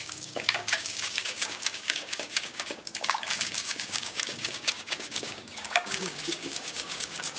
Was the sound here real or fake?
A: fake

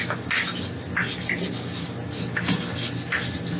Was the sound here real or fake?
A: real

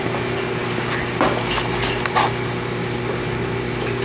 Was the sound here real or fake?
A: real